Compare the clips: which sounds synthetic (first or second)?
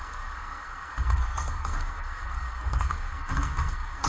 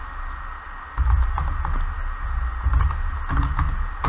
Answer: first